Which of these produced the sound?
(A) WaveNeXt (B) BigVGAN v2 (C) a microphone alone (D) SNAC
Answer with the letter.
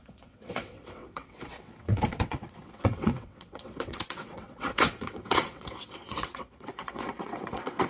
A